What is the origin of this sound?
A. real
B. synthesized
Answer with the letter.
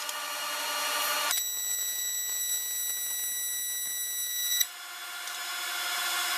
A